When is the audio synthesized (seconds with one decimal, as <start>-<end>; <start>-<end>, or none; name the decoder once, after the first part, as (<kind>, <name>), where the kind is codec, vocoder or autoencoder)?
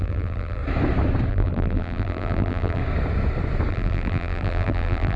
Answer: 0.0-0.6 (vocoder, BigVGAN v2); 1.3-2.8; 3.7-5.2